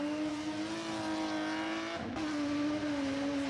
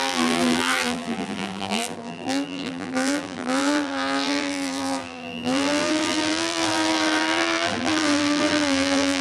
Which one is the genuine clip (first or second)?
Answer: first